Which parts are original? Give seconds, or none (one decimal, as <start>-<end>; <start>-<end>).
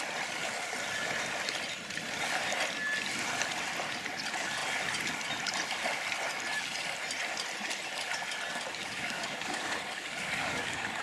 0.0-8.8